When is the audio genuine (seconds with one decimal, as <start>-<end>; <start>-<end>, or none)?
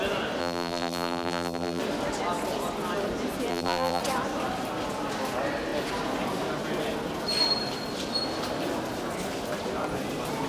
0.0-0.4; 1.8-3.5; 4.0-10.5